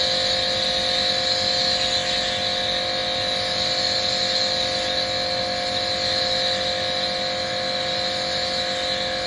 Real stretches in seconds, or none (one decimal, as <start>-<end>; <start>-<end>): 0.0-9.3